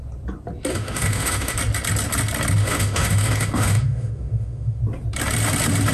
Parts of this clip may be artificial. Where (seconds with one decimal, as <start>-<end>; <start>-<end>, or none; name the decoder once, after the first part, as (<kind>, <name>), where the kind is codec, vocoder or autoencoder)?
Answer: 0.7-1.6 (autoencoder, DAC-VAE); 2.6-4.8